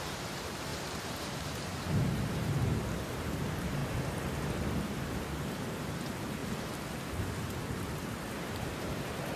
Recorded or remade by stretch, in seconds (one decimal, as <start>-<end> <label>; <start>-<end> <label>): 0.0-0.7 remade; 0.7-1.2 recorded; 1.2-3.8 remade; 3.8-4.8 recorded; 4.8-6.4 remade; 6.4-7.7 recorded; 7.7-9.4 remade